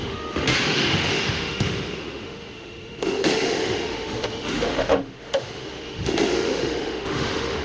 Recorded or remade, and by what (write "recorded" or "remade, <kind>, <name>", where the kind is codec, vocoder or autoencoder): remade, autoencoder, DAC-VAE